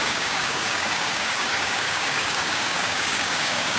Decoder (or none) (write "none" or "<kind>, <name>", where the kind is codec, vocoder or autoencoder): codec, DAC